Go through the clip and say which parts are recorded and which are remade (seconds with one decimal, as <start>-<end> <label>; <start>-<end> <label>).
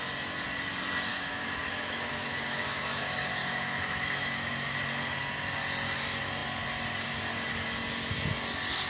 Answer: 0.0-1.1 recorded; 1.1-3.0 remade; 3.0-3.4 recorded; 3.4-4.7 remade; 4.7-8.9 recorded